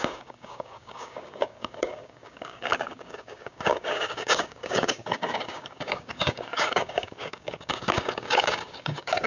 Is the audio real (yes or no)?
no